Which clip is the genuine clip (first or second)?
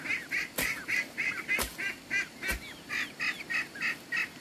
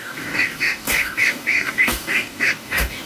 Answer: first